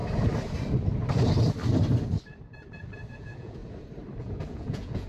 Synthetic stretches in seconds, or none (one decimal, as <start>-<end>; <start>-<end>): 3.1-3.6; 4.2-5.1